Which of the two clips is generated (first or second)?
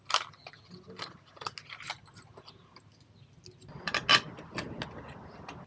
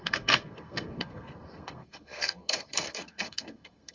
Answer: second